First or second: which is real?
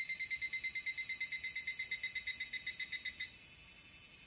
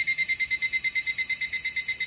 first